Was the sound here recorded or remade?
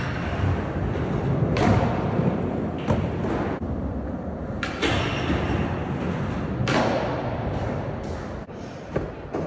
recorded